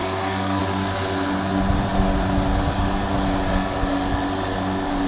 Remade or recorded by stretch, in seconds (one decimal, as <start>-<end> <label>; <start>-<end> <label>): 0.0-0.6 remade; 0.6-5.1 recorded